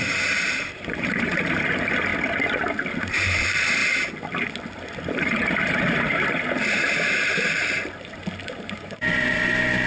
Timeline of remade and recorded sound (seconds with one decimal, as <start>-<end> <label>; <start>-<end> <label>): 0.0-2.1 remade; 2.1-3.0 recorded; 3.0-3.8 remade; 3.8-5.2 recorded; 5.2-7.6 remade; 7.6-8.4 recorded; 8.4-9.9 remade